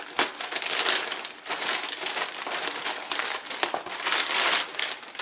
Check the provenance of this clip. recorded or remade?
recorded